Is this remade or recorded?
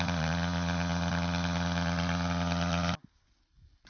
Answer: recorded